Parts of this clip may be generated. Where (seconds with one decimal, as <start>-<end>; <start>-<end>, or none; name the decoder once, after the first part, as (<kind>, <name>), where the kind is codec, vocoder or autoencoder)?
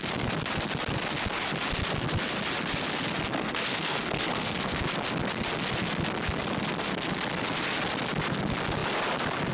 3.3-4.8 (codec, SNAC)